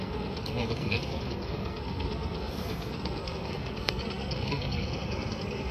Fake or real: fake